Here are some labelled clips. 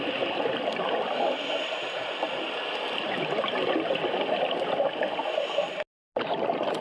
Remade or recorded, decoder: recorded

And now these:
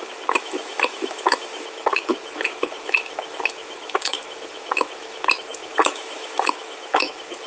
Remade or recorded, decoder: remade, autoencoder, DAC-VAE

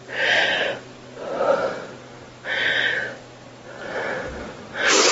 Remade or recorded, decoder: recorded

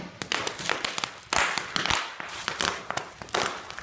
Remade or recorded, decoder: recorded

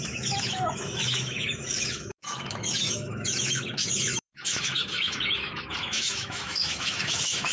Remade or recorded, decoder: remade, autoencoder, DAC-VAE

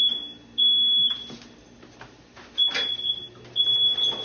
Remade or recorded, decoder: recorded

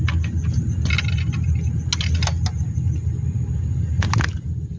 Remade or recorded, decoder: recorded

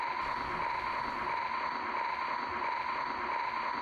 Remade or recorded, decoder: recorded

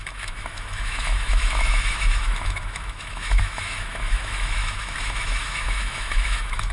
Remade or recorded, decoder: remade, autoencoder, DAC-VAE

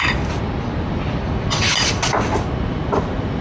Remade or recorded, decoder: recorded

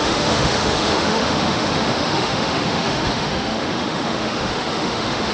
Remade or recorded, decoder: remade, autoencoder, DAC-VAE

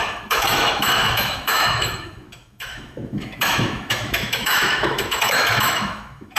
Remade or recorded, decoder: remade, autoencoder, DAC-VAE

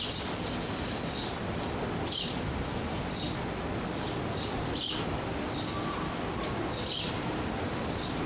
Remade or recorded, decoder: recorded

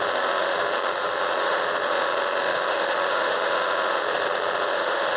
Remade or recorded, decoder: remade, autoencoder, DAC-VAE